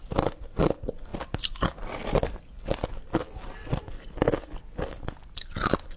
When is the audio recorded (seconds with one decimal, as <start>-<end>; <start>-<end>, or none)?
0.0-6.0